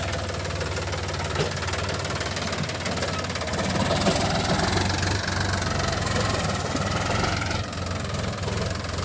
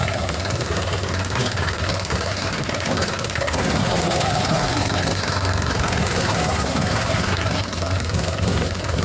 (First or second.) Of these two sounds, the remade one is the second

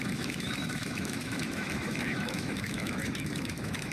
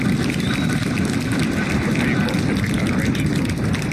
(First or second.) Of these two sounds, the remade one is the first